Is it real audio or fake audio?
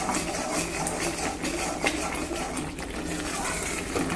real